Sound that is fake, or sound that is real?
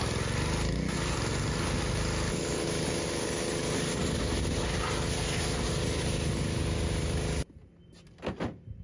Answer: real